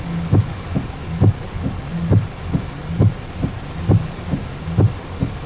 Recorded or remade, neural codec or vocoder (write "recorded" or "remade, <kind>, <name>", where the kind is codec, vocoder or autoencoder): recorded